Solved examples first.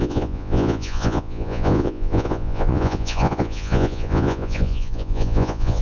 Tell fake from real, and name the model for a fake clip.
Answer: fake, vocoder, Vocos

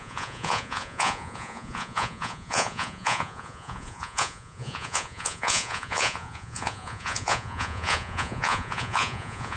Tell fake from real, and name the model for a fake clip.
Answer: fake, vocoder, Vocos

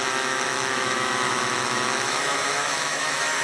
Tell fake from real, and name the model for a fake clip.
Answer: fake, autoencoder, DAC-VAE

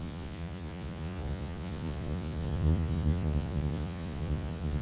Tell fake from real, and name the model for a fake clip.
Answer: fake, vocoder, Vocos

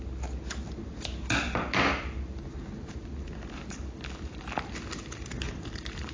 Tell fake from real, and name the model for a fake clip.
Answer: real